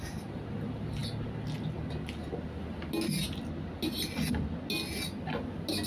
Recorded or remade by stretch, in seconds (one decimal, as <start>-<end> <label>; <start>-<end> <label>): 0.0-5.9 recorded